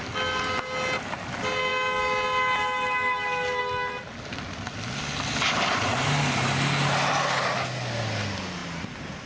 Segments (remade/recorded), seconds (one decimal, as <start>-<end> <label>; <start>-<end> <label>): 0.0-9.3 recorded